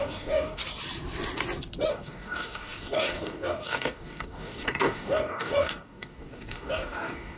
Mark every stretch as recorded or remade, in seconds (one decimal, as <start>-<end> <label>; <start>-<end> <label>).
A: 0.0-0.6 remade; 0.6-1.9 recorded; 1.9-7.4 remade